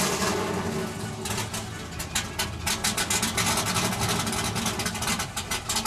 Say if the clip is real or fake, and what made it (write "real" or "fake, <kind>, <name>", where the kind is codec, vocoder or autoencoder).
real